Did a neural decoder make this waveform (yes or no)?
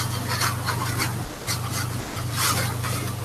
no